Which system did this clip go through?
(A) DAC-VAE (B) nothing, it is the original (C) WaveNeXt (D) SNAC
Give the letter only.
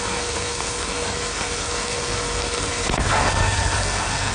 D